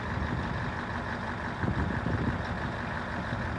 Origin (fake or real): real